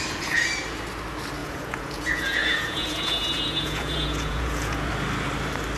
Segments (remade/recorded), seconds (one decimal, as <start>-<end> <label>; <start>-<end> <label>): 0.0-1.4 recorded; 1.4-4.9 remade; 4.9-5.8 recorded